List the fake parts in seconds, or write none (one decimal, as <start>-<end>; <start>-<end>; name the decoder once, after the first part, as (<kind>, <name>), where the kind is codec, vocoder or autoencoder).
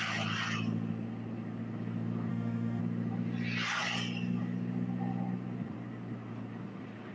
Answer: 2.3-2.8 (autoencoder, DAC-VAE)